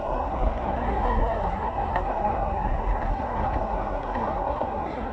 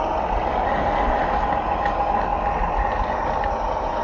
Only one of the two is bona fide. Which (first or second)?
second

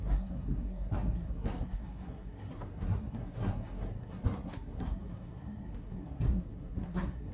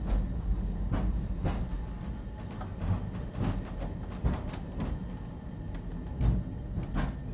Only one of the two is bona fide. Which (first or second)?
second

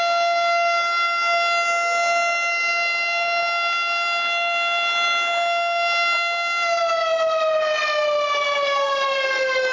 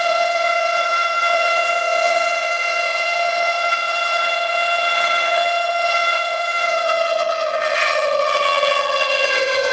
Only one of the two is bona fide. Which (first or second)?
first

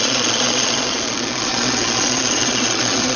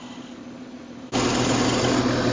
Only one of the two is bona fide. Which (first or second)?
second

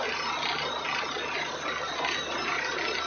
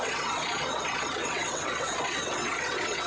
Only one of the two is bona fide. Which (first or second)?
first